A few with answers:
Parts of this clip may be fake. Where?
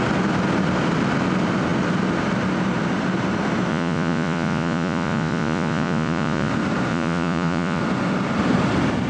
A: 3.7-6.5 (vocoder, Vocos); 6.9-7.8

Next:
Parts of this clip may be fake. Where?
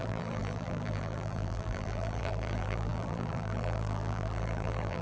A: 0.0-5.0 (vocoder, BigVGAN v2)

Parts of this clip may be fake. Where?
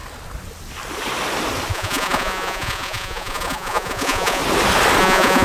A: 1.7-4.4 (vocoder, Vocos); 5.0-5.4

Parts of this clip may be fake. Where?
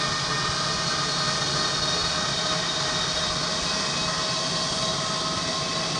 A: none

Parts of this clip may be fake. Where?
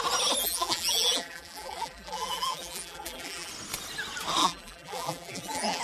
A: 0.4-3.5 (vocoder, BigVGAN v2); 4.4-5.8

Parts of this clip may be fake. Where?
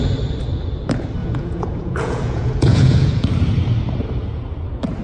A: 1.2-3.3 (vocoder, Vocos)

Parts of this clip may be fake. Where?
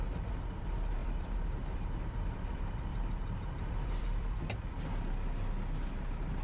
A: 1.0-4.8 (vocoder, BigVGAN v2)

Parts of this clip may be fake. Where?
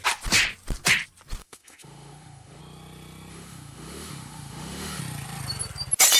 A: 1.4-2.6 (autoencoder, DAC-VAE); 3.3-5.0